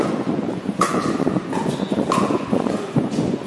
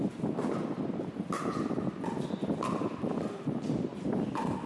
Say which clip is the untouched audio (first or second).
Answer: second